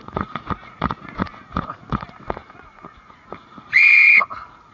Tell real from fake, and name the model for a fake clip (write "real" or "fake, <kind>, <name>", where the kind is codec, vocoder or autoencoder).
fake, vocoder, Vocos